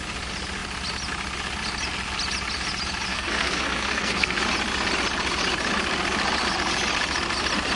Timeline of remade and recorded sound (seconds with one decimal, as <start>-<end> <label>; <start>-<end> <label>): 0.0-3.1 recorded; 3.1-4.4 remade; 4.4-7.8 recorded